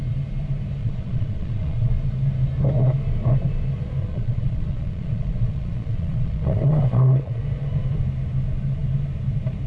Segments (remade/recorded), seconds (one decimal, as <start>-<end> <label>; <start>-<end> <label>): 0.0-0.8 recorded; 0.8-1.9 remade; 1.9-4.0 recorded; 4.0-7.4 remade; 7.4-9.7 recorded